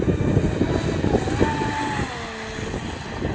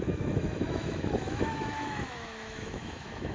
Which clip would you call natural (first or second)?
first